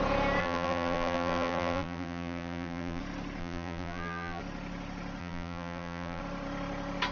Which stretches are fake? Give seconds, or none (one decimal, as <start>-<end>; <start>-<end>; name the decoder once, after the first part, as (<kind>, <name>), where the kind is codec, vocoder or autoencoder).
0.4-3.0 (vocoder, BigVGAN v2); 3.4-4.4; 5.2-6.2